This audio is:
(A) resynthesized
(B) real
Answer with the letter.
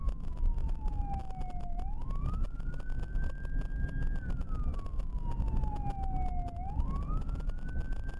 B